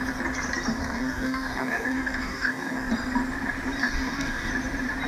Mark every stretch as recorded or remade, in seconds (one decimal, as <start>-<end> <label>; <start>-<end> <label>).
0.0-0.8 recorded; 0.8-2.9 remade; 2.9-3.8 recorded; 3.8-4.5 remade; 4.5-5.1 recorded